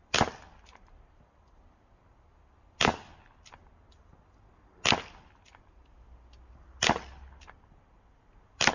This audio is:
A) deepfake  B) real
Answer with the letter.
B